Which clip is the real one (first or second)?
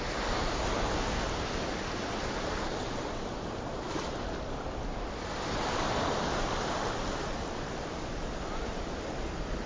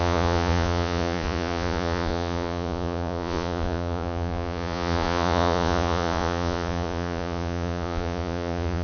first